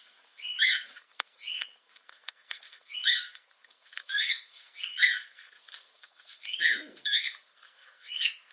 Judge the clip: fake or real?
fake